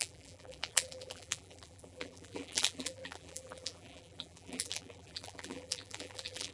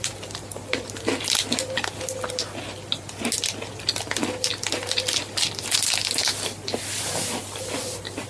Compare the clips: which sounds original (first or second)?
second